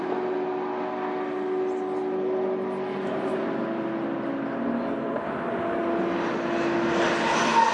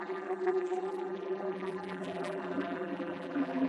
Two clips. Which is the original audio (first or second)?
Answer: first